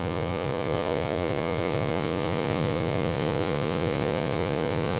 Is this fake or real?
fake